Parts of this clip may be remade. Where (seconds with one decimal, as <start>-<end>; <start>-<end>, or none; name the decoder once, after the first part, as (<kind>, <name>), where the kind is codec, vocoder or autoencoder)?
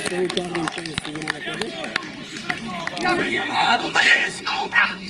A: 3.2-5.1 (codec, SNAC)